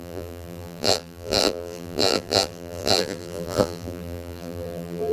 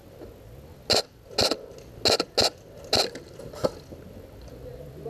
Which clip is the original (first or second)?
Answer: second